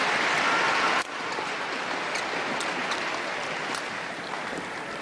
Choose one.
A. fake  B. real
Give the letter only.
B